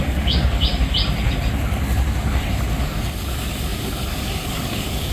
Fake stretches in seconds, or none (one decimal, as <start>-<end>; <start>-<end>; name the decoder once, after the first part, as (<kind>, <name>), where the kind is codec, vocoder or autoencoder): 0.0-0.7 (codec, DAC); 2.8-5.1